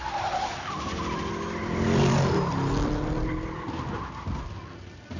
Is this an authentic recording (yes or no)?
yes